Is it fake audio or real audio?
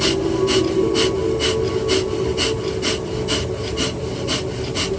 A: real